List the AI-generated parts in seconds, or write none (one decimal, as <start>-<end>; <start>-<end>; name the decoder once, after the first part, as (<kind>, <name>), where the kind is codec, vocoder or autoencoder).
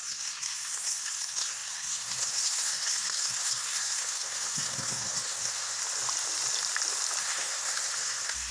0.0-5.8 (codec, SNAC); 7.2-8.5